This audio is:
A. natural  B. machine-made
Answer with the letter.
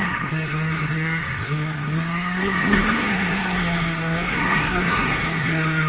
B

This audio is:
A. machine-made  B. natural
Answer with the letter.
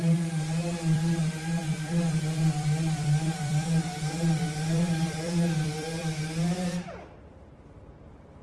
A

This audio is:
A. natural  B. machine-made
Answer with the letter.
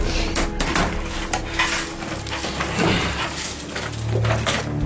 A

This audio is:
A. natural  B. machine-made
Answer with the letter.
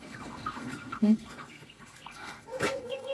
B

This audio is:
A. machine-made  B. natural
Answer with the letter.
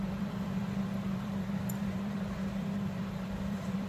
A